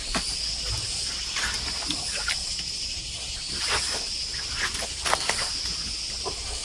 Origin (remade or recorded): recorded